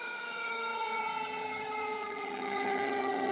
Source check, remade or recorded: remade